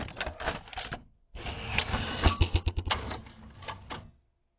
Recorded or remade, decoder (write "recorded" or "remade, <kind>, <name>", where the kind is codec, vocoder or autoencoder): recorded